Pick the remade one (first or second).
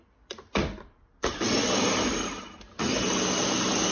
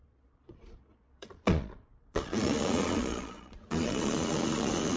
second